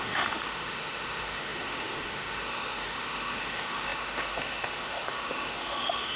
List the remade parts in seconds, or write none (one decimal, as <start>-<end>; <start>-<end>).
0.0-6.2